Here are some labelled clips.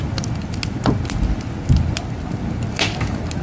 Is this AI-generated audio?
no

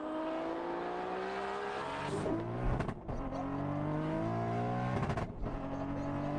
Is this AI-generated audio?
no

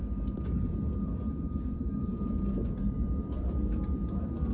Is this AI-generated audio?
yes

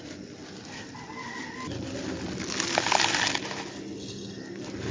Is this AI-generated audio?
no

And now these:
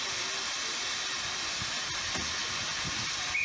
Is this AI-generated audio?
no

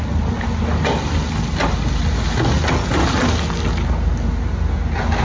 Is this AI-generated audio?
no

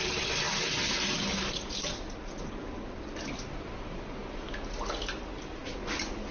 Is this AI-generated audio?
no